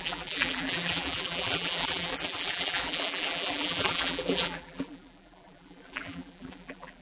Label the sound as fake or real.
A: fake